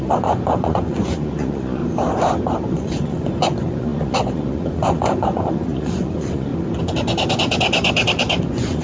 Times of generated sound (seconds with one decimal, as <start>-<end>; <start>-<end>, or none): 0.0-1.8; 2.6-6.5; 8.4-8.8

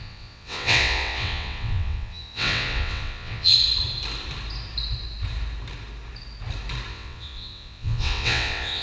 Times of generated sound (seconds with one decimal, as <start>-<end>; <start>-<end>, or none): 0.0-3.5; 6.9-8.8

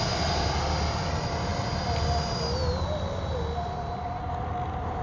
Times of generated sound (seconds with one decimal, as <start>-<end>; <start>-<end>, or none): 0.0-5.0

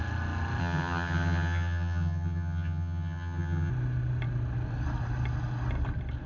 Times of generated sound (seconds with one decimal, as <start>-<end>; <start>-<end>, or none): 0.6-3.7

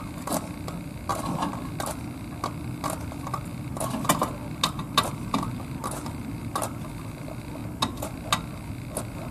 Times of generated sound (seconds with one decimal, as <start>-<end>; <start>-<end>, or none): none

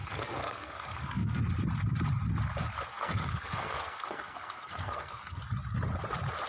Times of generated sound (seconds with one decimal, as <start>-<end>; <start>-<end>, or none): 0.0-1.4; 2.9-5.4

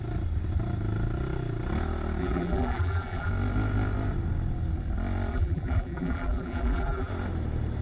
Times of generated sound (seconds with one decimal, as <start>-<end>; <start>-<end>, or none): 2.2-3.3; 5.3-7.1

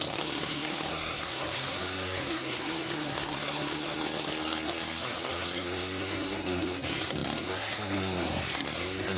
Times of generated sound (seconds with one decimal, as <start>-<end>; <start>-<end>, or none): 0.0-9.2